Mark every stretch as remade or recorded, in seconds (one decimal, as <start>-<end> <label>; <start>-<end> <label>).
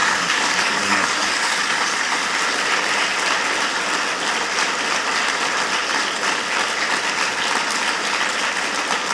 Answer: 0.0-2.2 remade; 2.2-9.1 recorded